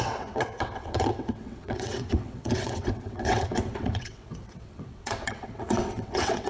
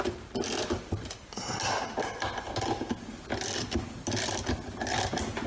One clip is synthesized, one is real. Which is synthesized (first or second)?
first